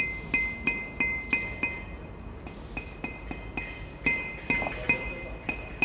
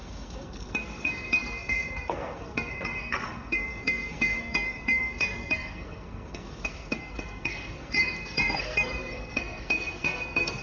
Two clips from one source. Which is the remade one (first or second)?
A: second